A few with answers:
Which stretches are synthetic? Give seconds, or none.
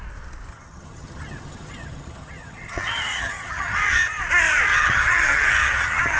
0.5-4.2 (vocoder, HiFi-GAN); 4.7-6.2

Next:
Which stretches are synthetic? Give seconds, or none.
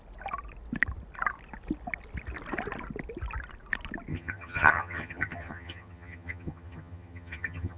4.1-7.8 (vocoder, HiFi-GAN)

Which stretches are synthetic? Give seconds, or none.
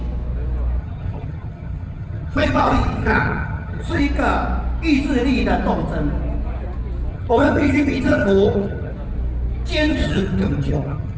0.8-4.0 (vocoder, HiFi-GAN); 7.1-8.9; 9.9-11.2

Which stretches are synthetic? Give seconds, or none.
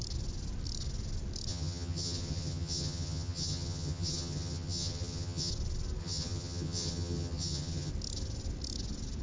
1.5-5.5 (vocoder, HiFi-GAN); 6.0-7.9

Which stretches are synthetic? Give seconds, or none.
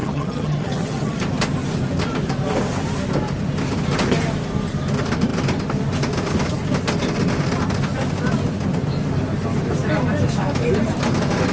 0.0-1.2 (vocoder, HiFi-GAN)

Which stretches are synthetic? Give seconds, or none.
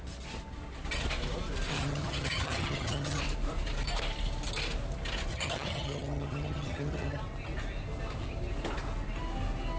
1.7-3.2 (vocoder, HiFi-GAN); 5.3-7.2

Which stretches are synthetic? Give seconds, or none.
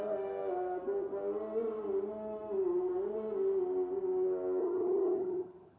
4.6-5.8 (vocoder, HiFi-GAN)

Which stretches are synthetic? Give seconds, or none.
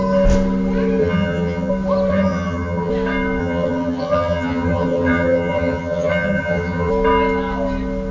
1.0-1.7 (vocoder, HiFi-GAN); 2.1-2.9; 3.4-6.9